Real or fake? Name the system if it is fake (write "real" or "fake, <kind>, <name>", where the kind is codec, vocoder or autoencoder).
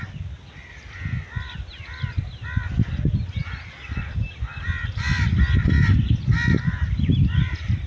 real